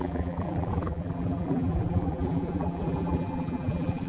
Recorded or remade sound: remade